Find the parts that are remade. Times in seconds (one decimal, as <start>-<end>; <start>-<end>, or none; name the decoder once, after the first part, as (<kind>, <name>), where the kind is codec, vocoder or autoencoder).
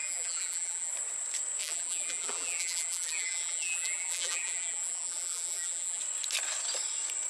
0.0-0.9 (vocoder, BigVGAN v2); 1.6-6.0